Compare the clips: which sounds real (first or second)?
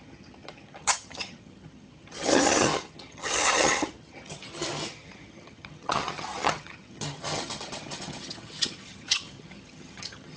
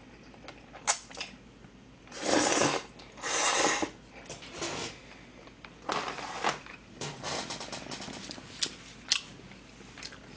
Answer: second